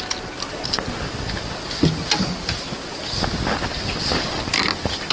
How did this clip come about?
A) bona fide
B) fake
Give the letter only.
A